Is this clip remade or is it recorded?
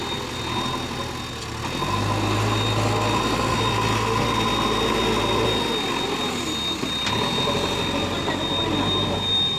recorded